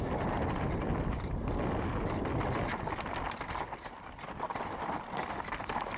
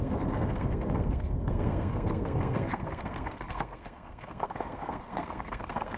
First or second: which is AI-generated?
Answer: second